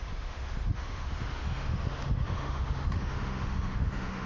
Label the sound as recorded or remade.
remade